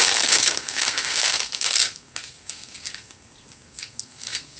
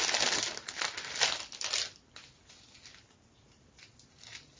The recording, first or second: second